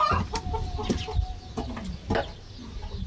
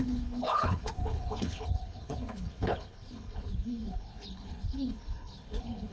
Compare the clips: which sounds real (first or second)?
first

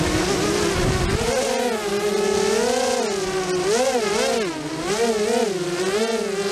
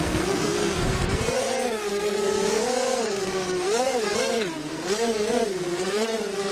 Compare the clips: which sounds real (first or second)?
first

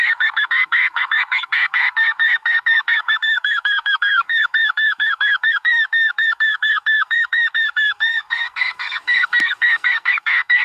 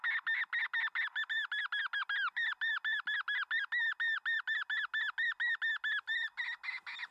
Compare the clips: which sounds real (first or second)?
second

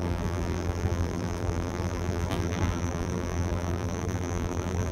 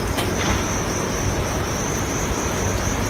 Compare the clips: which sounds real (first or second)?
second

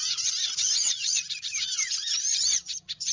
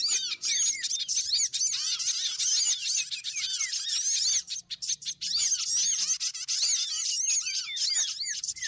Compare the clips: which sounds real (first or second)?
second